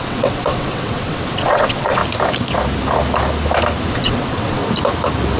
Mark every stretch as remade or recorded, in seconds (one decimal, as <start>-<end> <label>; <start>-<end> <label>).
0.0-2.0 remade; 2.0-3.9 recorded; 3.9-4.6 remade; 4.6-5.4 recorded